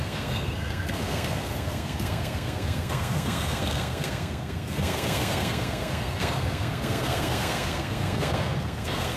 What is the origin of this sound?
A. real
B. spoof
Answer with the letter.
B